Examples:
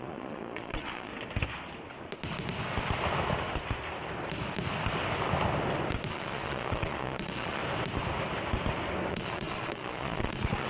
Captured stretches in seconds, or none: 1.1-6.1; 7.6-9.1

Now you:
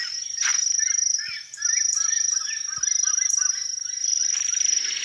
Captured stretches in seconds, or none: 0.0-5.0

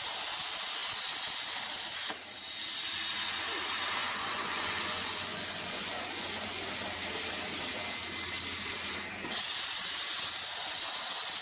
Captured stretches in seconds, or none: 0.0-4.0; 6.6-11.4

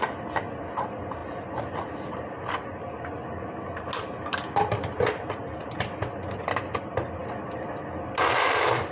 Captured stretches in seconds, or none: 0.0-8.9

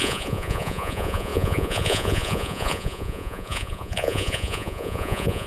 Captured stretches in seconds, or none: none